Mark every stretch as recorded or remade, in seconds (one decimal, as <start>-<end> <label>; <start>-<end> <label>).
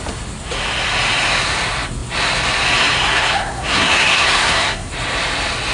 0.0-3.1 recorded; 3.1-4.9 remade; 4.9-5.7 recorded